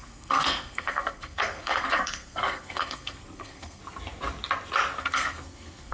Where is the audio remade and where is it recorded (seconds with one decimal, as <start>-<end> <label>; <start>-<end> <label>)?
0.0-3.8 remade; 3.8-5.0 recorded; 5.0-5.9 remade